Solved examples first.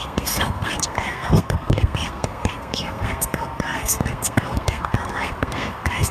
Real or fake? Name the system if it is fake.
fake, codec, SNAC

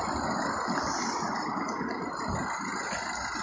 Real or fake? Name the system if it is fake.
real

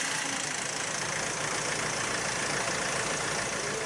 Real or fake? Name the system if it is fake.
real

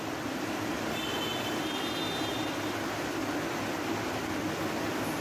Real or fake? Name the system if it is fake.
real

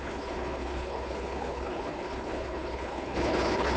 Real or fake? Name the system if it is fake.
fake, codec, HILCodec